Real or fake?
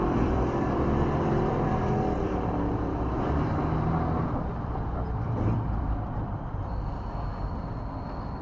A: fake